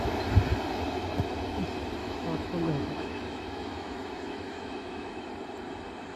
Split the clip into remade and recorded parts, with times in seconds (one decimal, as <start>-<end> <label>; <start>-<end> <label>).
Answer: 0.0-2.0 recorded; 2.0-5.3 remade; 5.3-6.2 recorded